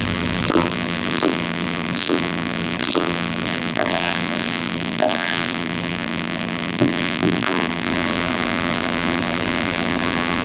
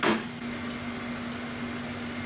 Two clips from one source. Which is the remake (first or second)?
first